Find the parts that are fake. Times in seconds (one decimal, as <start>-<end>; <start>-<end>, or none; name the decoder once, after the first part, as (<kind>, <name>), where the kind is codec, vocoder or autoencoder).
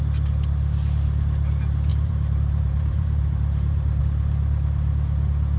1.9-4.0 (vocoder, BigVGAN v2)